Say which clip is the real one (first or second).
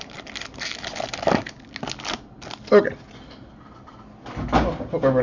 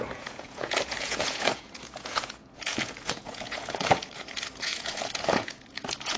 first